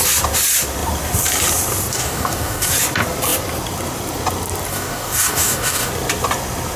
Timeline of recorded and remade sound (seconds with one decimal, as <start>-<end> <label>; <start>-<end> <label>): 0.0-1.9 recorded; 1.9-2.7 remade; 2.7-4.7 recorded; 4.7-5.9 remade; 5.9-6.8 recorded